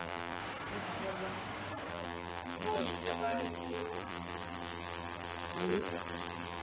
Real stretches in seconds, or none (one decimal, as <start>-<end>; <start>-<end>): 0.4-1.9